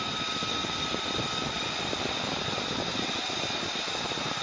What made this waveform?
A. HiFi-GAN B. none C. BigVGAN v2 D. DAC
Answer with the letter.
B